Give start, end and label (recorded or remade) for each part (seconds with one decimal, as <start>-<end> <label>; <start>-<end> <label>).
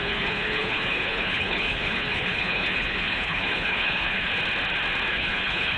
0.0-4.3 remade; 4.3-5.1 recorded; 5.1-5.8 remade